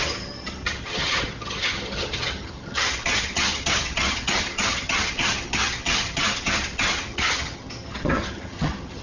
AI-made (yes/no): yes